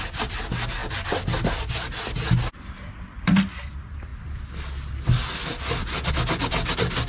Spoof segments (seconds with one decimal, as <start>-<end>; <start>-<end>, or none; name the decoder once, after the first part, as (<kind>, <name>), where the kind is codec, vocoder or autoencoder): none